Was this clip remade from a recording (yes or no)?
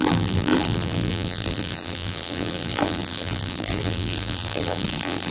yes